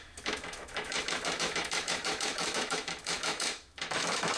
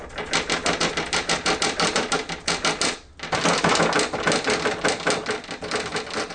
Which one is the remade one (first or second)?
first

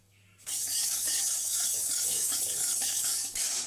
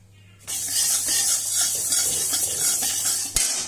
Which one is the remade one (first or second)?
first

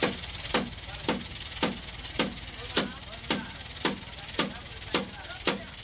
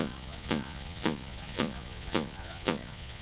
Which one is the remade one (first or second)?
second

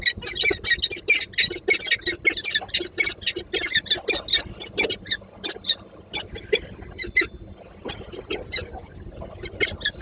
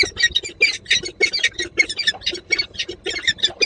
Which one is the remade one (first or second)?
second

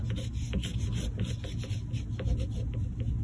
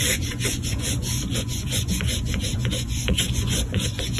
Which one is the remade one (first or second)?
second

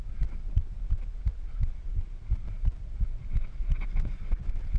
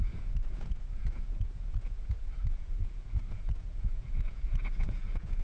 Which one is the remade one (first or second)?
second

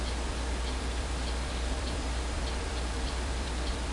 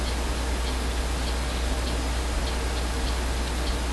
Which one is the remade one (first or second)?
first